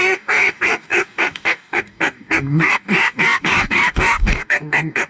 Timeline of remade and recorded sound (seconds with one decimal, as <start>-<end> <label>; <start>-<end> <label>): 0.0-5.1 remade